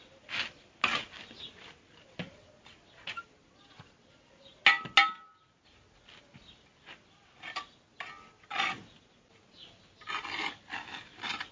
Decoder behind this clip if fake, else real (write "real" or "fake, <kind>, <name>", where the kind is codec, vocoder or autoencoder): real